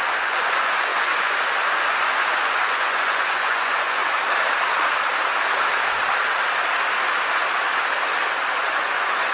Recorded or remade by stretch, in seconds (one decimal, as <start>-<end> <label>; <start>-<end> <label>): 0.0-4.0 remade; 4.0-8.6 recorded; 8.6-9.3 remade